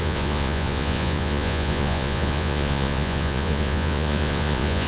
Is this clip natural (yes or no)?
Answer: no